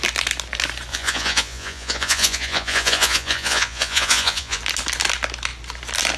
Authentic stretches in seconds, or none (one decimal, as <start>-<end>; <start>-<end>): 0.0-0.9; 4.6-6.2